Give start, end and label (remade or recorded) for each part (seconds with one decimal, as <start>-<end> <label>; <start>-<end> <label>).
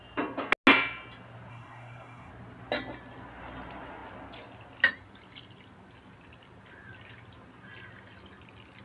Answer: 0.0-1.5 recorded; 1.5-2.3 remade; 2.3-8.8 recorded